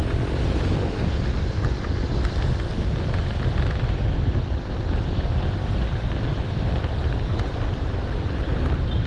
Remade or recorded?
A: recorded